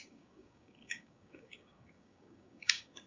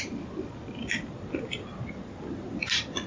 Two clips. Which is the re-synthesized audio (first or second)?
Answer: first